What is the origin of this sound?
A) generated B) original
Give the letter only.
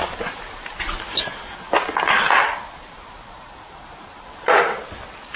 B